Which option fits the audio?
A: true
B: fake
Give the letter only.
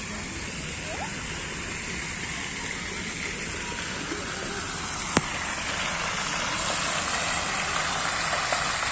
A